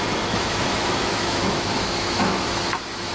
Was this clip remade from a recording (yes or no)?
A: yes